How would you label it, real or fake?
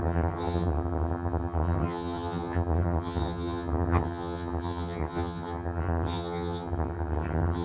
fake